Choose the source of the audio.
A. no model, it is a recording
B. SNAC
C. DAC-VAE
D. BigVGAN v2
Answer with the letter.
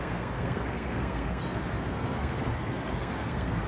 B